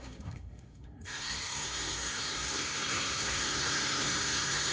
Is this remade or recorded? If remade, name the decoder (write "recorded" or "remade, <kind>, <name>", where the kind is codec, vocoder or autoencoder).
remade, codec, SNAC